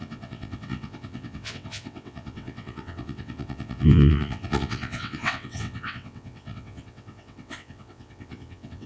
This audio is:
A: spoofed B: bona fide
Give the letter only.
A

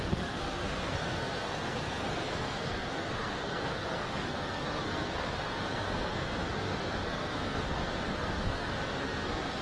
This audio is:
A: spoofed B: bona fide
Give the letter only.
A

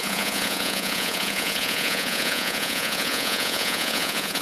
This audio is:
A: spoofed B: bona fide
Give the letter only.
A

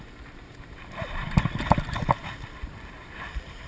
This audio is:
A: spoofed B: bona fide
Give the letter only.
A